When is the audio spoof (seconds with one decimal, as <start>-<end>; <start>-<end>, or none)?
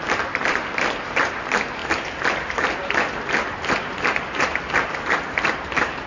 0.0-1.8; 5.5-6.1